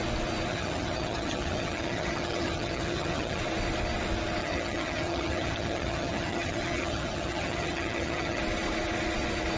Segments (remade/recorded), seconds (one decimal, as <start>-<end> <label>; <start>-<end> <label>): 0.0-0.5 recorded; 0.5-3.4 remade; 3.4-4.4 recorded; 4.4-8.4 remade; 8.4-9.6 recorded